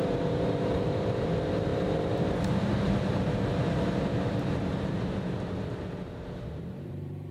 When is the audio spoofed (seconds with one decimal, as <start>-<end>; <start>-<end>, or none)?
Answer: 0.0-7.3